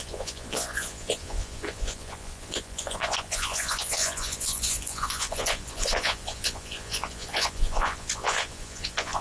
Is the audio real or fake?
fake